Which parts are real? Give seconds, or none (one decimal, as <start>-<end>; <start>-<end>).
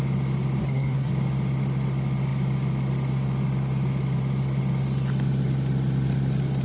0.0-0.6; 1.1-6.6